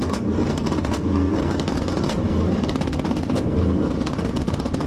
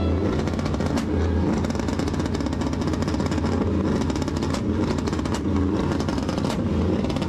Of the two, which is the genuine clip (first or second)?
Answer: second